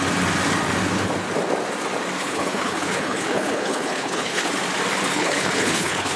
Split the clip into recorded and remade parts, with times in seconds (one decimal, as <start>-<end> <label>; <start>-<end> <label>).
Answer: 0.0-2.2 recorded; 2.2-4.5 remade; 4.5-5.1 recorded; 5.1-6.2 remade